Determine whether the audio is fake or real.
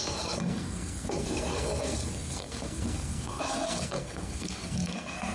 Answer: fake